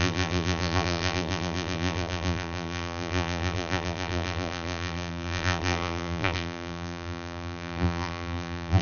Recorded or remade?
remade